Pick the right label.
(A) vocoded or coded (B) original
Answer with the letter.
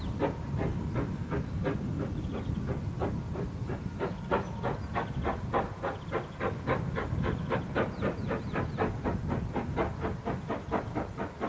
B